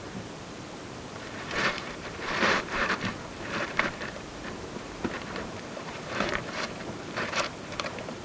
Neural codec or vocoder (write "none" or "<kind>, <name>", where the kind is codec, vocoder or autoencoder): vocoder, BigVGAN v2